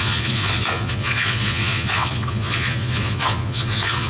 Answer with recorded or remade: remade